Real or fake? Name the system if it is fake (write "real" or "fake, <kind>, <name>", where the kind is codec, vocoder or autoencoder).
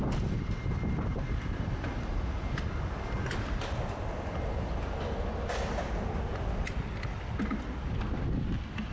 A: real